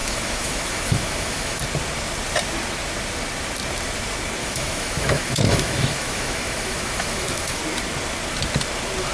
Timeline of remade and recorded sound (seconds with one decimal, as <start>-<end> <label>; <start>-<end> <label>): 0.0-1.6 remade; 1.6-4.4 recorded; 4.4-7.6 remade; 7.6-9.1 recorded